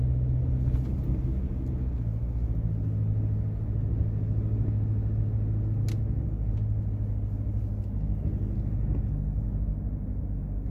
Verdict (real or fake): real